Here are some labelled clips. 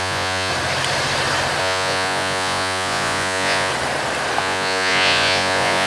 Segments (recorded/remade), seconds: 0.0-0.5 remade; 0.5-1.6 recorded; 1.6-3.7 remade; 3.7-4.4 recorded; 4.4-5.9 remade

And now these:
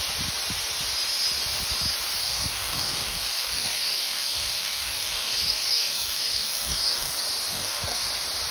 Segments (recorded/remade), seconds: 0.0-2.2 recorded; 2.2-7.1 remade; 7.1-7.5 recorded; 7.5-8.1 remade; 8.1-8.5 recorded

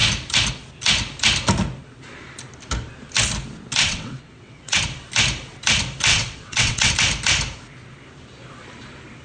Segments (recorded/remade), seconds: 0.0-3.8 recorded; 3.8-4.8 remade; 4.8-6.1 recorded; 6.1-6.9 remade; 6.9-9.2 recorded

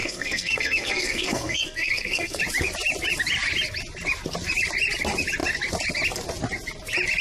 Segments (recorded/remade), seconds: 0.0-2.4 remade; 2.4-7.2 recorded

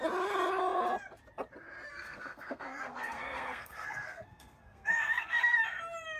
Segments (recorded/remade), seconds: 0.0-1.9 recorded; 1.9-5.6 remade; 5.6-6.2 recorded

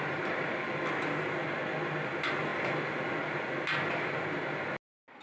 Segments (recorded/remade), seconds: 0.0-5.2 recorded

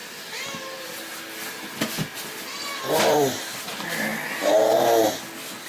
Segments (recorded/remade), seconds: 0.0-5.7 recorded

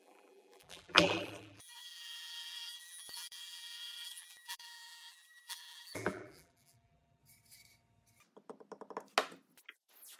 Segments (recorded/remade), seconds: 0.0-7.2 remade; 7.2-10.2 recorded